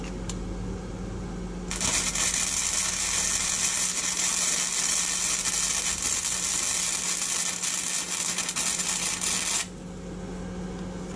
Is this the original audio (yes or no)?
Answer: yes